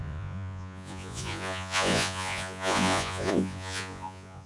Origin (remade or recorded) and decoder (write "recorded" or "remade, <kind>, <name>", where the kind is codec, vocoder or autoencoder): remade, vocoder, Vocos